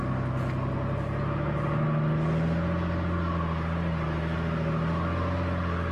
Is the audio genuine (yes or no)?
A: yes